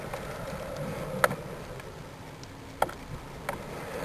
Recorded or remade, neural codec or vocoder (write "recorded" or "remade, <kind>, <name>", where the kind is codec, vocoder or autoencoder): recorded